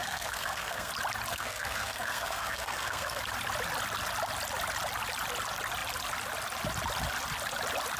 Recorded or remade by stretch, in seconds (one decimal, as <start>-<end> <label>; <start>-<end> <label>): 0.0-0.9 remade; 0.9-1.3 recorded; 1.3-3.2 remade; 3.2-8.0 recorded

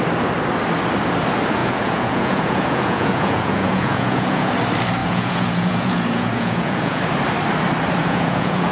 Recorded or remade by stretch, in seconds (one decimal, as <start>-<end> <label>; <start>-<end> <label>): 0.0-1.6 recorded; 1.6-4.5 remade; 4.5-5.0 recorded; 5.0-7.0 remade; 7.0-8.0 recorded; 8.0-8.7 remade

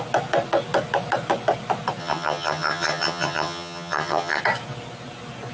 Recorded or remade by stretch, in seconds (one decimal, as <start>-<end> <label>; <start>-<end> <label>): 0.0-2.0 recorded; 2.0-4.4 remade; 4.4-5.5 recorded

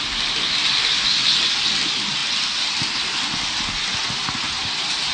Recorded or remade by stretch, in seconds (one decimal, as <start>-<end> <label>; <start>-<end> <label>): 0.0-5.1 recorded

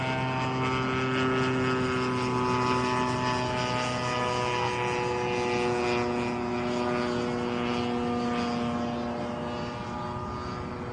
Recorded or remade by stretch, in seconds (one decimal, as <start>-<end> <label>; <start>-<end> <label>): 0.0-10.9 recorded

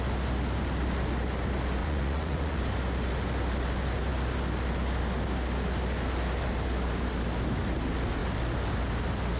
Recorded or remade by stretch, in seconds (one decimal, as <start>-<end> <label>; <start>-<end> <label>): 0.0-1.8 recorded; 1.8-2.6 remade; 2.6-9.4 recorded

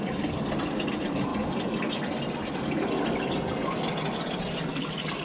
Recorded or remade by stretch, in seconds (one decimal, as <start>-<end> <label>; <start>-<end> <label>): 0.0-5.2 recorded

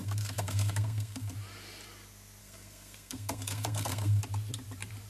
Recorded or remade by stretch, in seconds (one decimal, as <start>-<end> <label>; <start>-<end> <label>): 0.0-1.3 remade; 1.3-2.4 recorded; 2.4-4.2 remade; 4.2-5.1 recorded